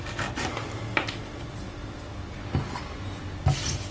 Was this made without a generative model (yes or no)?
yes